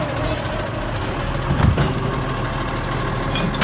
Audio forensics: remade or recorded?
recorded